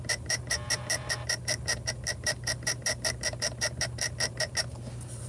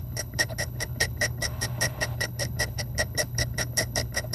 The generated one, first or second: second